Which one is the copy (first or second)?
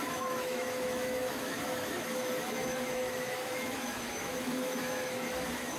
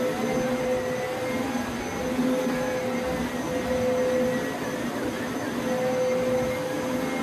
first